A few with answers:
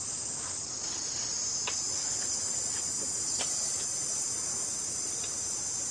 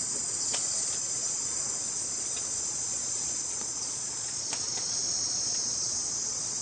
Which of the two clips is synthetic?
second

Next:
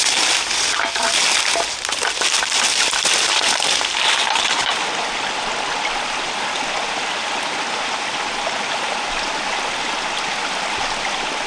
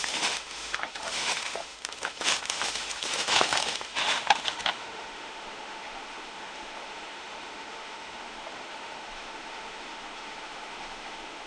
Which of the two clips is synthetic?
second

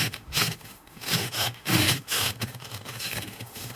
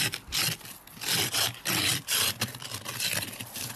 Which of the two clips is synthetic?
first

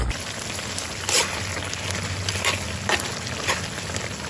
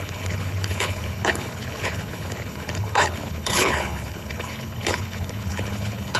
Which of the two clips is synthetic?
second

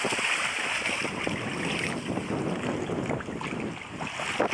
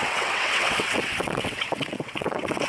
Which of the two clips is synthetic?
second